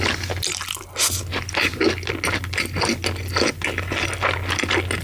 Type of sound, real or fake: real